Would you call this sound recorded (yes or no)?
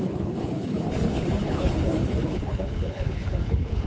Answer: no